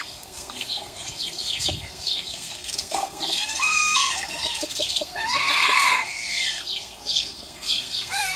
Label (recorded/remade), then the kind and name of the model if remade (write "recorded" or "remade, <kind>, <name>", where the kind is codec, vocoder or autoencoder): remade, codec, SNAC